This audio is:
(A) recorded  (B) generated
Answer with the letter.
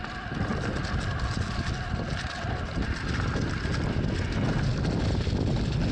A